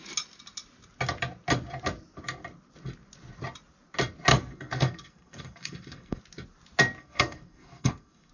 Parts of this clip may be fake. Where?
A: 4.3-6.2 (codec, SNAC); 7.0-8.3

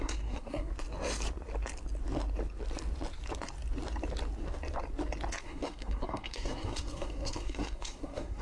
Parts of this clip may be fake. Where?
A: 0.0-0.7 (codec, SNAC); 5.4-8.4

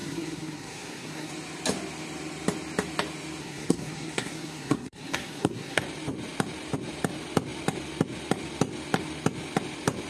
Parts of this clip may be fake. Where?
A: 0.0-1.3 (codec, SNAC); 3.4-5.8

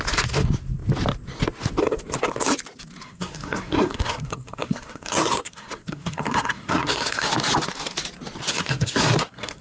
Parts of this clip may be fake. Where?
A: 3.0-7.3 (codec, SNAC); 8.5-9.6